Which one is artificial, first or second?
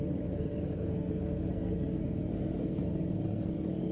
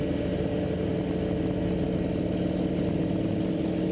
first